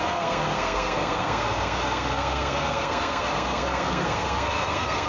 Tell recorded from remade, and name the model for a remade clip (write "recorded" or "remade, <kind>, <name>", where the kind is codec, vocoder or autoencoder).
remade, codec, SNAC